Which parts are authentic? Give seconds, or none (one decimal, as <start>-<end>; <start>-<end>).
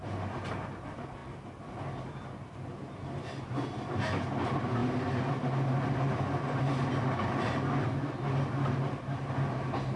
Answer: 0.0-10.0